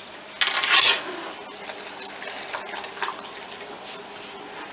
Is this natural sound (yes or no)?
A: yes